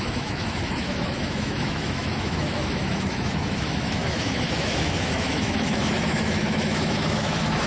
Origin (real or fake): fake